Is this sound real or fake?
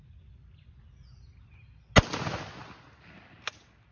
real